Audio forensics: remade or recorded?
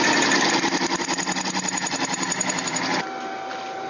recorded